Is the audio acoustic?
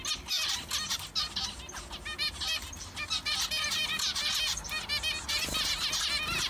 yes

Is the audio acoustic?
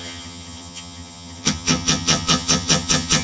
no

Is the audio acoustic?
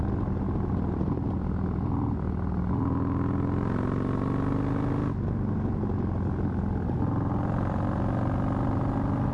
yes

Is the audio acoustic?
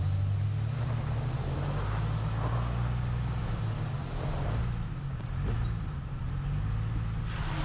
yes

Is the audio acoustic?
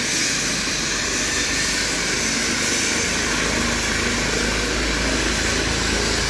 yes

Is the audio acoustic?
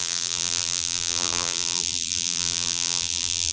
no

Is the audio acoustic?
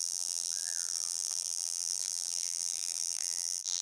no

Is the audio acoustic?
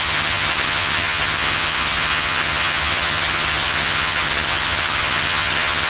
no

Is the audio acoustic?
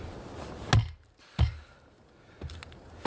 yes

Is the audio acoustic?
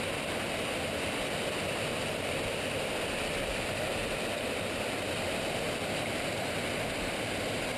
yes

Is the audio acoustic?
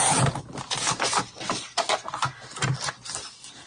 yes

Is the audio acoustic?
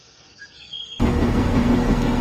no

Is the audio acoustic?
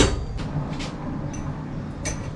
yes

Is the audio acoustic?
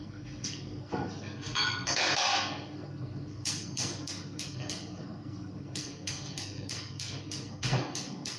no